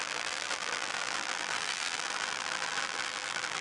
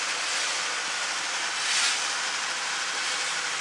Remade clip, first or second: first